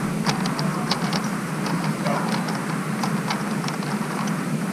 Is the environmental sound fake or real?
real